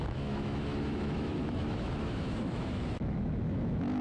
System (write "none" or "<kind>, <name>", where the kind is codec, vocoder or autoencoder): autoencoder, DAC-VAE